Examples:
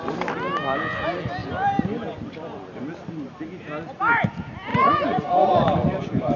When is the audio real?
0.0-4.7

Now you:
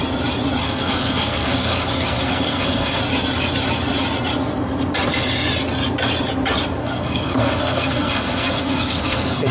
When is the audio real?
0.0-0.6; 3.0-6.8

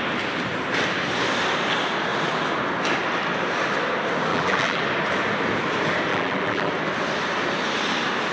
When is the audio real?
0.0-4.3; 4.8-6.1; 6.7-8.3

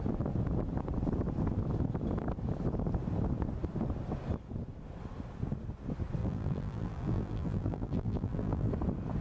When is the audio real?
0.0-6.2; 8.7-9.2

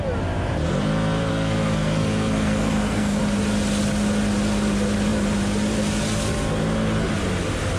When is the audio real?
0.0-1.3; 3.2-7.8